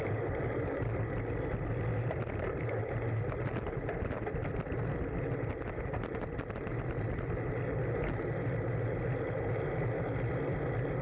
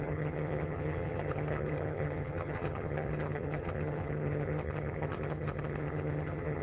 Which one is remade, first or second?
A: second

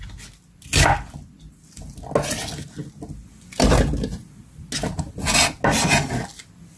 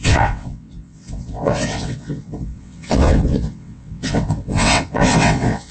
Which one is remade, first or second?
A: second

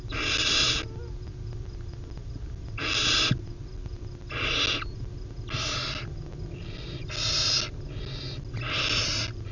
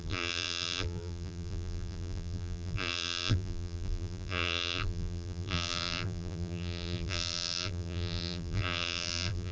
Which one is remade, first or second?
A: second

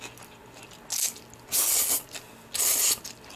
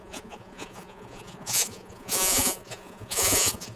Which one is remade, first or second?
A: second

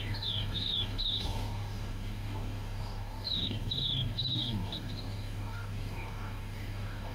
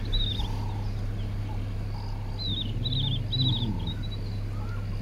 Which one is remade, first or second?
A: first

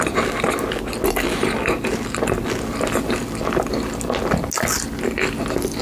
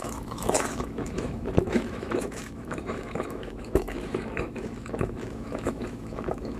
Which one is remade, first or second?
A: second